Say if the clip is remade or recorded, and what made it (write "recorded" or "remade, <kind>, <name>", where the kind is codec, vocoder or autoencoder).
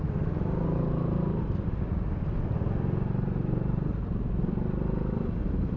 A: recorded